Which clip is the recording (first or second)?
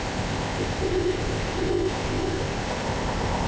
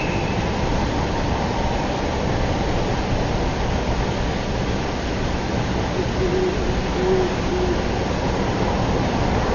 second